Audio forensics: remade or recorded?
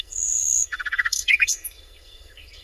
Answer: remade